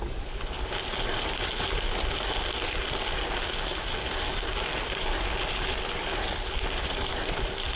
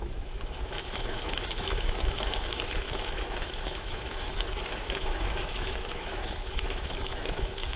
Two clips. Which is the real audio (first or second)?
first